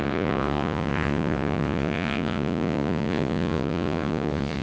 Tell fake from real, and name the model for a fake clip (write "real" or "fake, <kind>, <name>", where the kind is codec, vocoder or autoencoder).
fake, vocoder, Vocos